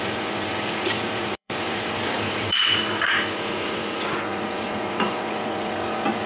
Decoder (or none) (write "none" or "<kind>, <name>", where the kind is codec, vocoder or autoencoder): vocoder, Vocos